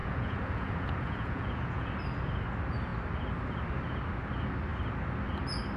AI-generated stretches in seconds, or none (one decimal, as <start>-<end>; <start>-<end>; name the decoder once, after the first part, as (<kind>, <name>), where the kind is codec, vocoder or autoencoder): 0.0-1.9 (vocoder, Vocos)